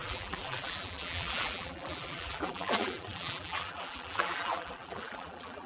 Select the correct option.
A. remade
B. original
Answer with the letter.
A